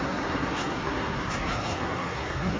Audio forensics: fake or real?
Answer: fake